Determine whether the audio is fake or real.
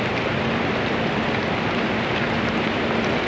fake